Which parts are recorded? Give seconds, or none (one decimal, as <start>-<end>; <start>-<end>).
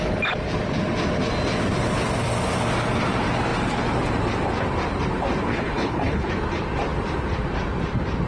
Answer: 0.0-5.5; 6.3-8.3